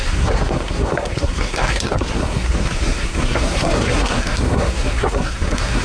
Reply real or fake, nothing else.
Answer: fake